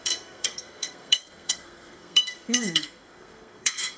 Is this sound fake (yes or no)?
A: yes